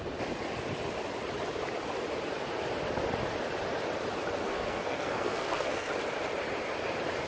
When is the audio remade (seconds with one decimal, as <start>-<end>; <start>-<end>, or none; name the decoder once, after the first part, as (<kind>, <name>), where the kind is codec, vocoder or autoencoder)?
4.4-5.9 (codec, SNAC)